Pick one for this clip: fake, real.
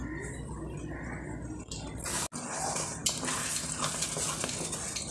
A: real